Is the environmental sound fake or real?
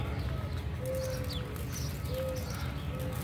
real